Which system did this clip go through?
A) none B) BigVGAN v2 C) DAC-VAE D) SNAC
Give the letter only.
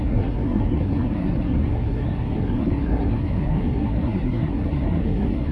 D